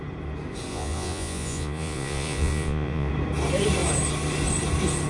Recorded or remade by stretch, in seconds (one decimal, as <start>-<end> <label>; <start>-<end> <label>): 0.0-0.7 recorded; 0.7-3.1 remade; 3.1-5.1 recorded